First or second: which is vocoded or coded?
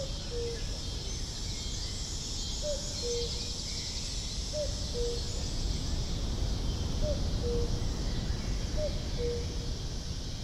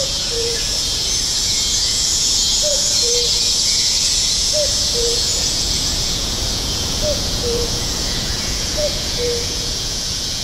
second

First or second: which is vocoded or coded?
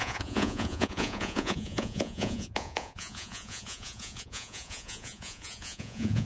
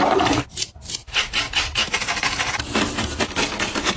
first